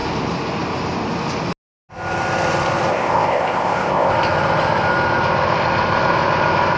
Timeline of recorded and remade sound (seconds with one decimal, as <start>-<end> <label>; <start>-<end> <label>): 0.0-2.9 recorded; 2.9-4.1 remade; 4.1-6.8 recorded

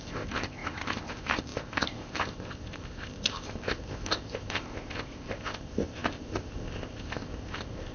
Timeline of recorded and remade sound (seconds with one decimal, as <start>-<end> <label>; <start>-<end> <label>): 0.0-7.9 remade

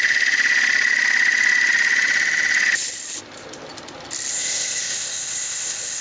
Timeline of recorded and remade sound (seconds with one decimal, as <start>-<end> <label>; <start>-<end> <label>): 0.0-4.3 recorded; 4.3-6.0 remade

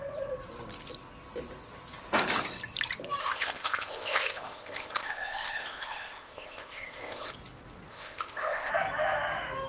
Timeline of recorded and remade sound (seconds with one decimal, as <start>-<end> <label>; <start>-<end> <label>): 0.0-3.2 recorded; 3.2-7.3 remade; 7.3-7.9 recorded; 7.9-8.7 remade; 8.7-9.7 recorded

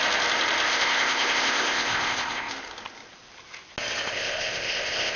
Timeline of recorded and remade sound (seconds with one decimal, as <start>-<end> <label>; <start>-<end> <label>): 0.0-0.7 recorded; 0.7-2.5 remade; 2.5-4.1 recorded; 4.1-5.2 remade

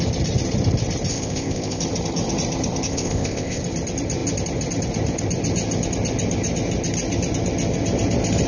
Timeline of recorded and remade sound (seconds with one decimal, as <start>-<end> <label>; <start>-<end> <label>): 0.0-1.1 recorded; 1.1-1.8 remade; 1.8-2.9 recorded; 2.9-3.6 remade; 3.6-8.5 recorded

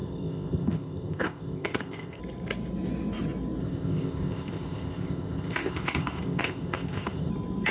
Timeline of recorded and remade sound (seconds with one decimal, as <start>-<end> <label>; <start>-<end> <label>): 0.0-2.2 remade; 2.2-3.6 recorded; 3.6-7.3 remade; 7.3-7.7 recorded

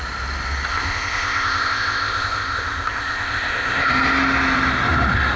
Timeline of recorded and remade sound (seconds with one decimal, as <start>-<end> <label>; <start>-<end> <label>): 0.0-0.7 recorded; 0.7-3.9 remade; 3.9-5.4 recorded